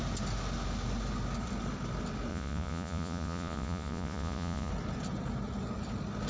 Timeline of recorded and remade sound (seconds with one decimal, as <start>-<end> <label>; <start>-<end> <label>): 0.0-2.3 recorded; 2.3-4.7 remade; 4.7-6.3 recorded